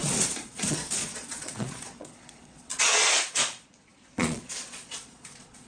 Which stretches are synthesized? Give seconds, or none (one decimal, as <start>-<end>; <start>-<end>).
0.0-5.7